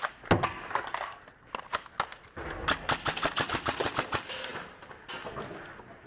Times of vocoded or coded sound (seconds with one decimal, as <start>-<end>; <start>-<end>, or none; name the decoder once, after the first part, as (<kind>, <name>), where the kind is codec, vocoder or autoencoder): none